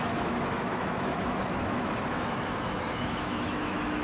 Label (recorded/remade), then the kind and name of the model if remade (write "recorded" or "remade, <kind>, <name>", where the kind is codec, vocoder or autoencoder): remade, autoencoder, DAC-VAE